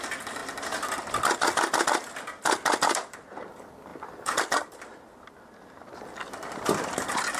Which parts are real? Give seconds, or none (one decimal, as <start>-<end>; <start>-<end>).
0.0-7.4